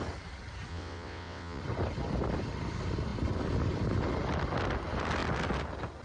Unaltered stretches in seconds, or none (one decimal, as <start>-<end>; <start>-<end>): 0.0-0.7; 1.6-6.0